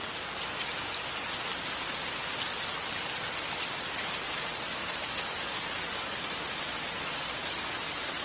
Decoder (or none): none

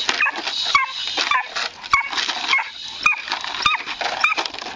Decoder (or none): none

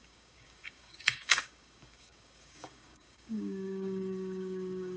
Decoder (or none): codec, DAC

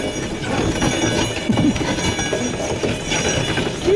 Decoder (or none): none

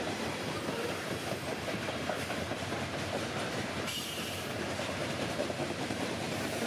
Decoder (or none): vocoder, BigVGAN v2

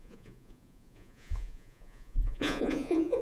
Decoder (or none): vocoder, Vocos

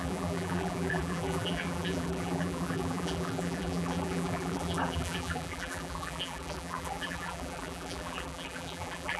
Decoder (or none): vocoder, BigVGAN v2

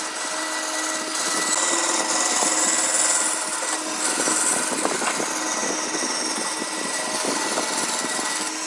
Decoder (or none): none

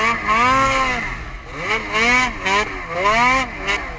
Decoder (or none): none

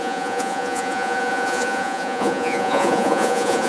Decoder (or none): vocoder, Vocos